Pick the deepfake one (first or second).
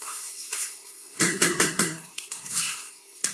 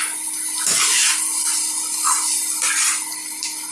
first